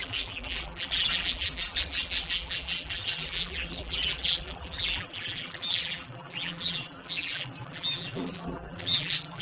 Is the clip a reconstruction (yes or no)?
yes